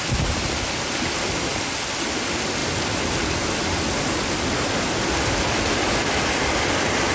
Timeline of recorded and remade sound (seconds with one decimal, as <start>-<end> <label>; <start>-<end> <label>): 0.0-7.1 recorded